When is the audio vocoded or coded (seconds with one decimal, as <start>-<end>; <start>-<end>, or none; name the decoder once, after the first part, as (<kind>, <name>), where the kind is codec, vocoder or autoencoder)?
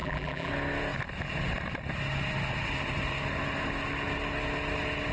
0.0-0.5 (vocoder, BigVGAN v2)